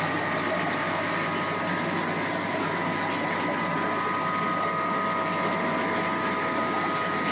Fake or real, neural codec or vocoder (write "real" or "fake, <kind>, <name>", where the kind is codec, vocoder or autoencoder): real